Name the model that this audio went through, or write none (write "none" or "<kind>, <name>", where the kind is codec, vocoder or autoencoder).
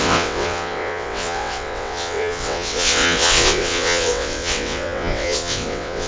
vocoder, WaveNeXt